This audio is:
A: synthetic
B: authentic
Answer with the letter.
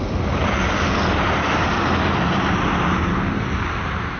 B